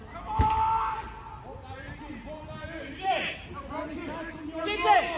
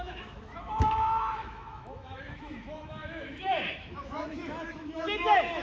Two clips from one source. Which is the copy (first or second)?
second